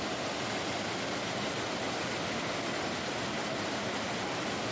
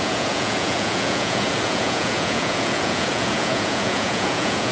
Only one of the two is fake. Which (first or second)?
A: second